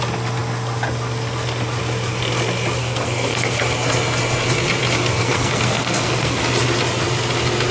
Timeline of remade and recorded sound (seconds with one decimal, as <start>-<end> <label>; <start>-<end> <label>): 0.0-2.8 recorded; 2.8-3.6 remade; 3.6-5.2 recorded; 5.2-6.4 remade; 6.4-7.7 recorded